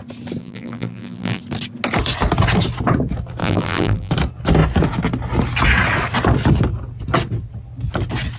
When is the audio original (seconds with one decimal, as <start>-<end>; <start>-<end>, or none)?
0.0-0.4; 1.4-3.4; 4.1-8.4